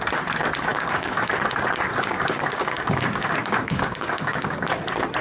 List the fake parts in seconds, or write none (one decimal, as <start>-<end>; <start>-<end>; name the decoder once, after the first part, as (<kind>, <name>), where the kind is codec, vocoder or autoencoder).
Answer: 0.7-1.3 (codec, DAC); 1.9-4.7

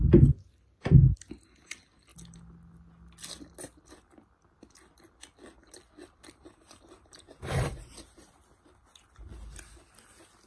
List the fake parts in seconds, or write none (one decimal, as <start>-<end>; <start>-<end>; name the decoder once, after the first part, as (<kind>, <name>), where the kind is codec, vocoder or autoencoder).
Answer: 6.0-8.4 (vocoder, BigVGAN v2)

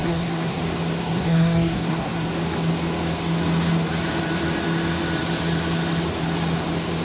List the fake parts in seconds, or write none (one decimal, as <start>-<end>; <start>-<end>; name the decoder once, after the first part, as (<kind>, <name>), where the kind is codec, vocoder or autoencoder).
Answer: 0.0-0.6 (codec, SNAC); 1.0-2.3

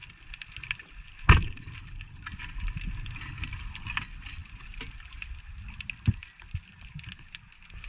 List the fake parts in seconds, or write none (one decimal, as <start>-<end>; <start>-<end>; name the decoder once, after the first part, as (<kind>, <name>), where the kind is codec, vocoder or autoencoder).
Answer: none

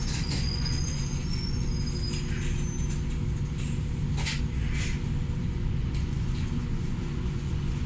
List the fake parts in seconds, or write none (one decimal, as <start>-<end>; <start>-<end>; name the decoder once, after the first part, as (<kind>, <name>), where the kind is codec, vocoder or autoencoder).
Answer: 0.0-1.7 (vocoder, Vocos); 5.4-7.9

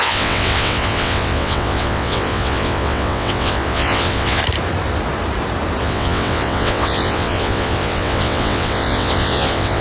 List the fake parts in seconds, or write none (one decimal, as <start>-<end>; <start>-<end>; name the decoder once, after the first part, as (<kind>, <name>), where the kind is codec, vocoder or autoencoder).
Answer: 0.0-4.4 (vocoder, WaveNeXt); 5.8-9.8

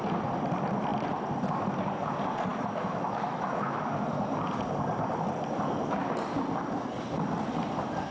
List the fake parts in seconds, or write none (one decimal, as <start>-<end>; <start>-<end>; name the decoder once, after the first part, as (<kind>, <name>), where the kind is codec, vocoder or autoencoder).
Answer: 2.5-3.9 (autoencoder, DAC-VAE)

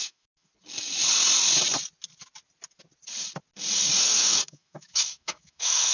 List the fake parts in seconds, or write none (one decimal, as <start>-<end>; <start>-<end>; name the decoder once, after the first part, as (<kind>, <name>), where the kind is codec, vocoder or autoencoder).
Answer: 0.0-0.5 (autoencoder, DAC-VAE); 4.0-5.9